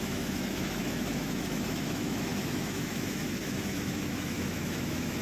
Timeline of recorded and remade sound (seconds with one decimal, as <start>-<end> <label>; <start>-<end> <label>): 0.0-5.2 remade